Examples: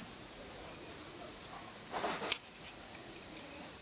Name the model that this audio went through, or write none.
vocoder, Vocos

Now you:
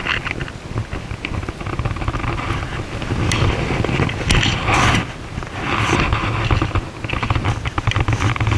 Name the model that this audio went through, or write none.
none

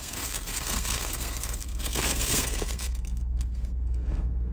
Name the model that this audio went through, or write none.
codec, SNAC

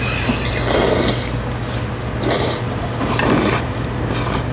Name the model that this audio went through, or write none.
none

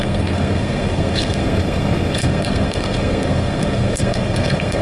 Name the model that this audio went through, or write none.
codec, SNAC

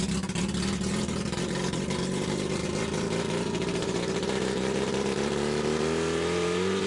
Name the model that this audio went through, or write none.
vocoder, BigVGAN v2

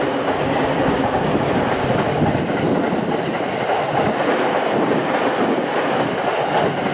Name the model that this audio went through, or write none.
none